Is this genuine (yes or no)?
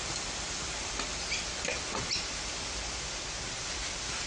no